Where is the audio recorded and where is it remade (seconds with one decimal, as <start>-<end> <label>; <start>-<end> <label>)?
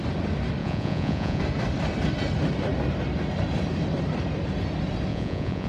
0.0-0.6 recorded; 0.6-1.4 remade; 1.4-5.1 recorded; 5.1-5.7 remade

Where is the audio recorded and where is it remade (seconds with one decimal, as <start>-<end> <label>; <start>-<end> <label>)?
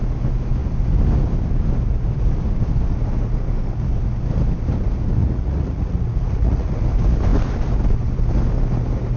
0.0-5.2 recorded; 5.2-6.7 remade; 6.7-9.2 recorded